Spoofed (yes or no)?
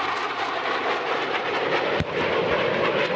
no